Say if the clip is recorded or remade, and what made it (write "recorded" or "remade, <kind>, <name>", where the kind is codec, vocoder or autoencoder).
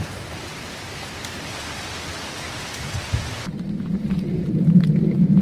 recorded